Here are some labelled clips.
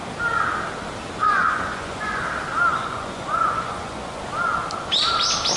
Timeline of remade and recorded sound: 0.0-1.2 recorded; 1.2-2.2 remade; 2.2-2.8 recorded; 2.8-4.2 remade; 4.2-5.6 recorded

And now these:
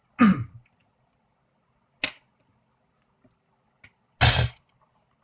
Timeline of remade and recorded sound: 0.0-5.2 recorded